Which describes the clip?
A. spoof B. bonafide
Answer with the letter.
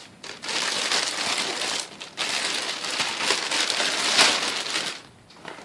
B